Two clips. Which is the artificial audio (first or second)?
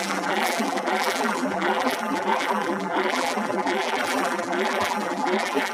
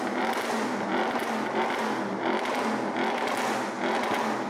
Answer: first